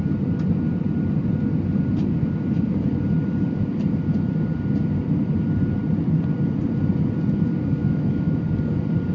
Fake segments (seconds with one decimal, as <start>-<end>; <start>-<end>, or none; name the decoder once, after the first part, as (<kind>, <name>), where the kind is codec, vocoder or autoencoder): 7.8-8.4 (autoencoder, DAC-VAE)